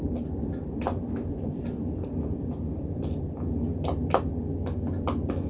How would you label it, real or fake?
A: real